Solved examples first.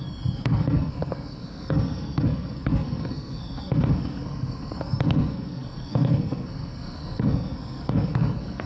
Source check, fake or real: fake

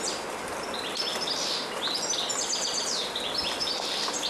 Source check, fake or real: real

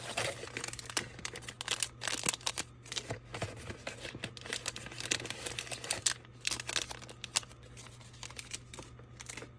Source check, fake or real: real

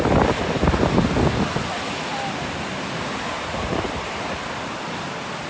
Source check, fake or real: real